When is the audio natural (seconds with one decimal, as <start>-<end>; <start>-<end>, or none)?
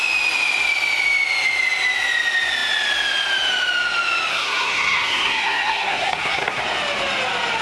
0.0-4.3; 6.6-7.6